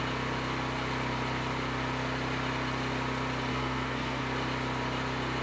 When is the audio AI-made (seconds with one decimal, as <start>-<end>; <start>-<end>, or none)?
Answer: 3.5-4.2